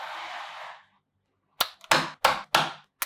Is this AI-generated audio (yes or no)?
no